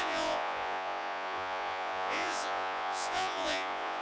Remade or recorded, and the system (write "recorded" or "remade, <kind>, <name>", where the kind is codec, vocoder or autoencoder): remade, vocoder, Vocos